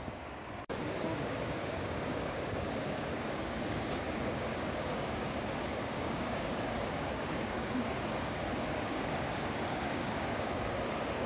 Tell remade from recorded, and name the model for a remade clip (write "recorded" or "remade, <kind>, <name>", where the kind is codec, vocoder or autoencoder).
remade, codec, DAC